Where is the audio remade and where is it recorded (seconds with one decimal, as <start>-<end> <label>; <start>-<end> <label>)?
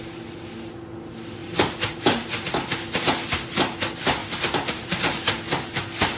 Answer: 0.0-4.2 recorded; 4.2-5.3 remade; 5.3-6.2 recorded